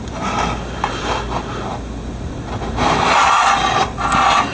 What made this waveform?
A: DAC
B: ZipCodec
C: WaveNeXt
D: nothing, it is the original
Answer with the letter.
D